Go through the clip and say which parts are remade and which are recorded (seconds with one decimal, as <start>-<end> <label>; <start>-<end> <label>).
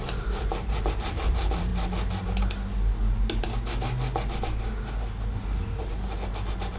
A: 0.0-1.7 remade; 1.7-5.8 recorded; 5.8-6.8 remade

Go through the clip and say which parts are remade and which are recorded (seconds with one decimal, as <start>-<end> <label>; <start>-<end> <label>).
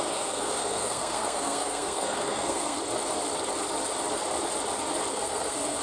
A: 0.0-2.8 remade; 2.8-5.1 recorded; 5.1-5.8 remade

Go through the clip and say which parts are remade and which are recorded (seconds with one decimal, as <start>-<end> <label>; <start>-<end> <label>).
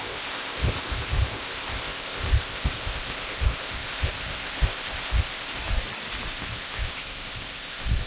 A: 0.0-5.6 remade; 5.6-6.3 recorded; 6.3-8.1 remade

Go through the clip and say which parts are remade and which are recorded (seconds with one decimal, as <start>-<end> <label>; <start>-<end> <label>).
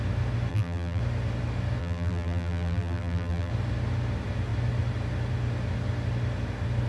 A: 0.0-0.5 recorded; 0.5-1.0 remade; 1.0-1.8 recorded; 1.8-3.5 remade; 3.5-6.9 recorded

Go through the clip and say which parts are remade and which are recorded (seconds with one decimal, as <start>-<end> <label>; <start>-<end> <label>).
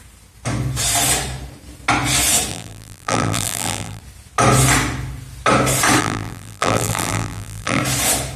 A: 0.0-2.5 recorded; 2.5-4.0 remade; 4.0-6.0 recorded; 6.0-7.8 remade; 7.8-8.4 recorded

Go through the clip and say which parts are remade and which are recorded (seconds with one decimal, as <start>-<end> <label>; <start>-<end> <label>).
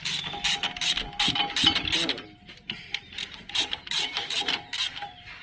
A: 0.0-3.2 recorded; 3.2-5.4 remade